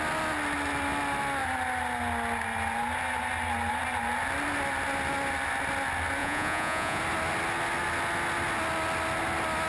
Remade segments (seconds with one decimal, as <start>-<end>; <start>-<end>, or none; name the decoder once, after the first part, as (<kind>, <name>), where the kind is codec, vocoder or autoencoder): 6.2-7.0 (vocoder, Vocos)